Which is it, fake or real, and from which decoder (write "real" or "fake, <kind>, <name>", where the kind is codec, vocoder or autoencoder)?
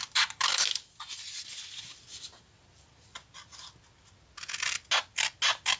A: real